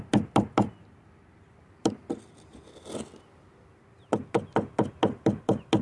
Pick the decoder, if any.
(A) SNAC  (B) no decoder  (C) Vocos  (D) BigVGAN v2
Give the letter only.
B